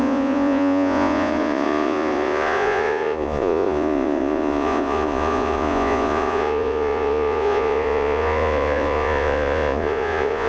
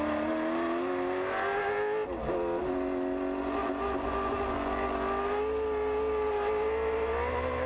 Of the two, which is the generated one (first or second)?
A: first